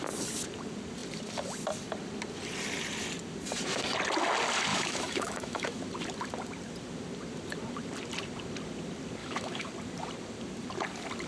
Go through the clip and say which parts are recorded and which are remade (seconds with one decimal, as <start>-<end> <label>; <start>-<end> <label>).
0.0-4.7 recorded; 4.7-5.8 remade; 5.8-9.2 recorded; 9.2-9.7 remade; 9.7-11.3 recorded